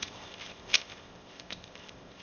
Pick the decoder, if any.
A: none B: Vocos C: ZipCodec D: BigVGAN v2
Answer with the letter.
C